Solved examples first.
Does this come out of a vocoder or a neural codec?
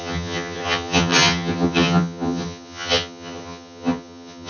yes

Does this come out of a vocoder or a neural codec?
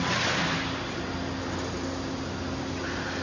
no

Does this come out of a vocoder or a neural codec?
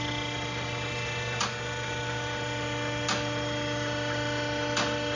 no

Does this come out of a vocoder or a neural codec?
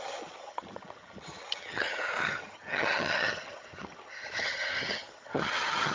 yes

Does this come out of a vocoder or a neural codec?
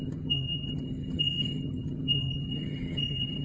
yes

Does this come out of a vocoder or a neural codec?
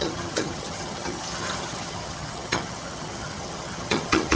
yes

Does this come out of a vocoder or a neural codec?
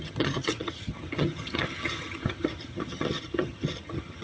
yes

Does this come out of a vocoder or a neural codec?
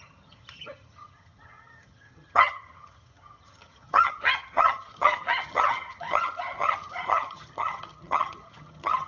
yes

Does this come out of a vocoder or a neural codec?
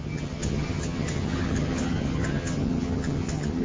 yes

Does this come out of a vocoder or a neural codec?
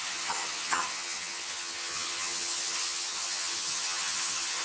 yes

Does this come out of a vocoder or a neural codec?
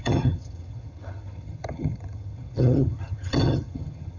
yes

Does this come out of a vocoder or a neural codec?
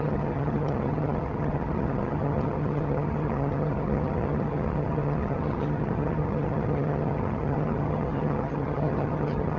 yes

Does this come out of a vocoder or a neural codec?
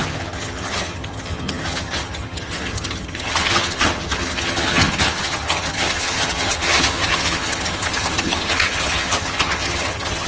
yes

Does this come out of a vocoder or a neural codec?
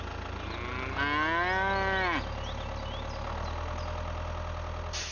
no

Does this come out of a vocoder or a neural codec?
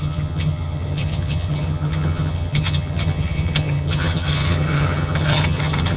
yes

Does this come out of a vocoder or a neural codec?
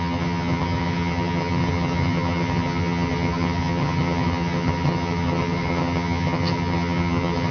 yes